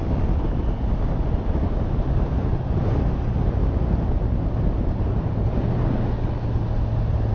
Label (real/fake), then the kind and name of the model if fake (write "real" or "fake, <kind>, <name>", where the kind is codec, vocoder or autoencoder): real